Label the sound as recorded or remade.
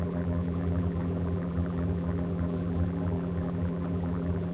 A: remade